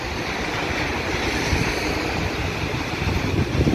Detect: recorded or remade recorded